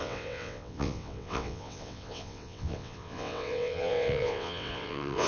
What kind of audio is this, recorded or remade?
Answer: remade